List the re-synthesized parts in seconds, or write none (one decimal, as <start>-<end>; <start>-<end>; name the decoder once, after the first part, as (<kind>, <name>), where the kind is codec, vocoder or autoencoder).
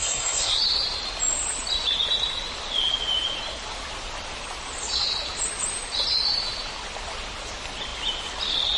0.0-0.6 (codec, SNAC)